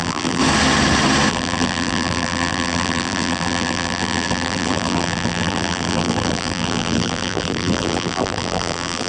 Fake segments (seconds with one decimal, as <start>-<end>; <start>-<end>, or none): 0.0-0.4; 1.3-9.1